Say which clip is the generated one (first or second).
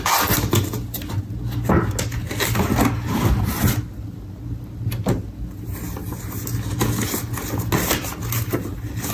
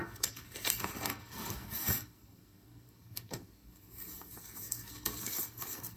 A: second